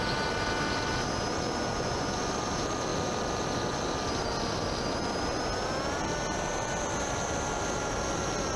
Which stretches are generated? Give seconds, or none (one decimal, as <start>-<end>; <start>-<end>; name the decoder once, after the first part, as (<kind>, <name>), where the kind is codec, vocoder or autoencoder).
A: 1.7-2.3 (vocoder, Vocos)